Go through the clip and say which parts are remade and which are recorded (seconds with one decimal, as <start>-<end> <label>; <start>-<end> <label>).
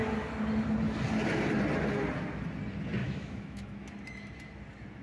0.0-3.0 recorded; 3.0-3.9 remade; 3.9-5.0 recorded